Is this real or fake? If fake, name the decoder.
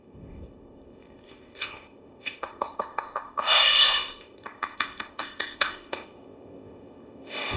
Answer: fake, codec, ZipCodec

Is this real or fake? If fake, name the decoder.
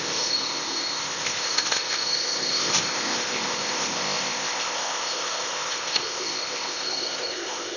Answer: fake, codec, ZipCodec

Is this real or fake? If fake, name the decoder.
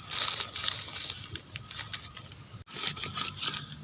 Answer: real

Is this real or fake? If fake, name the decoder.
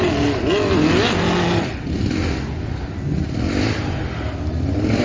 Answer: real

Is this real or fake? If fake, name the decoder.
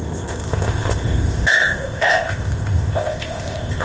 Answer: fake, codec, ZipCodec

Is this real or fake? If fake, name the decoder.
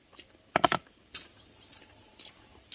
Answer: real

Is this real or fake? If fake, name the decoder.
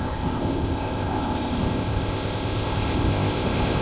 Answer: fake, codec, ZipCodec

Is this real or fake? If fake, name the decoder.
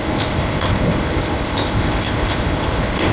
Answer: fake, codec, ZipCodec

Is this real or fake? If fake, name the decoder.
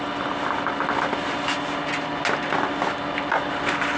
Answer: real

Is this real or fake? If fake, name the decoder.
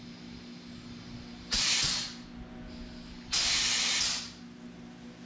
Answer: real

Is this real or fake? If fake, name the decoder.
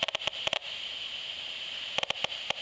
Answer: real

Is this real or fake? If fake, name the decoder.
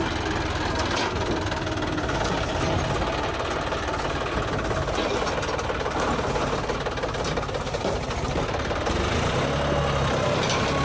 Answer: real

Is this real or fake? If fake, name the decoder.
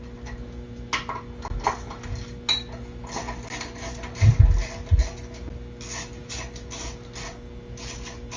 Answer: real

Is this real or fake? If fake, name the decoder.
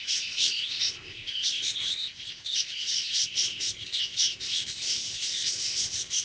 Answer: fake, codec, ZipCodec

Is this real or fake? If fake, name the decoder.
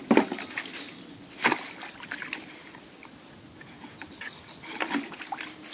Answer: real